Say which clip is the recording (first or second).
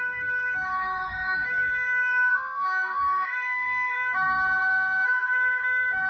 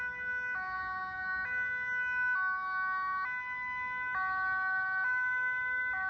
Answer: second